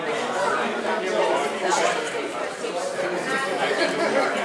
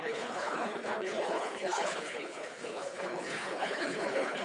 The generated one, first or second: second